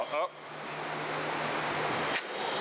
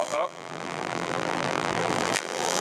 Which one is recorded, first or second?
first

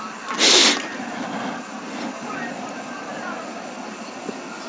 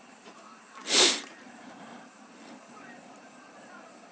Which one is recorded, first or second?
first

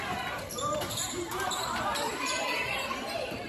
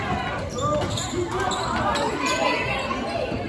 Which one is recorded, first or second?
second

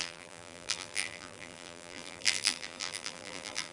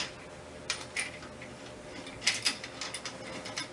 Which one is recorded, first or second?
second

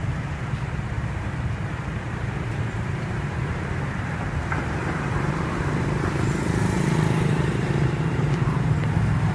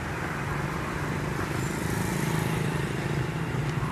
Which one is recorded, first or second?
second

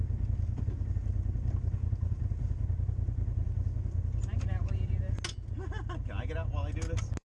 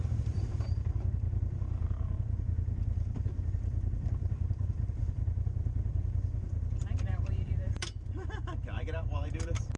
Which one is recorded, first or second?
first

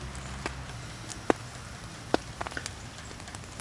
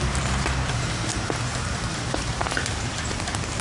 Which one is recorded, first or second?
first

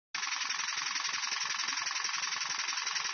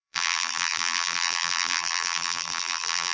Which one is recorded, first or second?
first